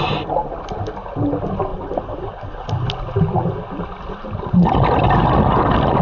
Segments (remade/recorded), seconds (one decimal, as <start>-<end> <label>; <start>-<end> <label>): 0.0-6.0 recorded